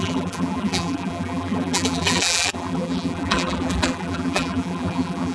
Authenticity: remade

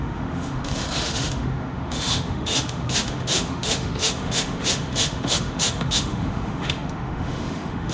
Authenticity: remade